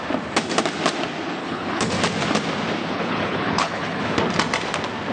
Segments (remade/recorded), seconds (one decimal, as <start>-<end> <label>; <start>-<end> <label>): 0.0-1.4 recorded; 1.4-1.9 remade; 1.9-2.8 recorded; 2.8-4.0 remade; 4.0-5.1 recorded